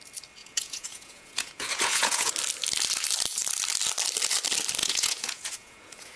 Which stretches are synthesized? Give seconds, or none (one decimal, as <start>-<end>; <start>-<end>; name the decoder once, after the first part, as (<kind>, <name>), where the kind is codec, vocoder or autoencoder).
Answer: 0.4-2.3 (vocoder, Vocos); 4.8-6.2